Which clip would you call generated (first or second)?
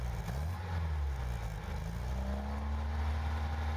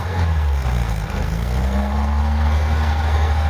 second